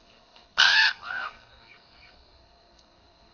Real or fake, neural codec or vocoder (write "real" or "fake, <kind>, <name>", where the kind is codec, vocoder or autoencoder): fake, codec, SNAC